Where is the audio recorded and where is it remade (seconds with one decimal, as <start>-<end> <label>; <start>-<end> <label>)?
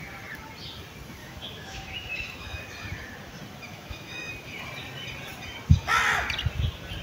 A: 0.0-1.2 recorded; 1.2-2.6 remade; 2.6-3.7 recorded; 3.7-4.3 remade; 4.3-7.0 recorded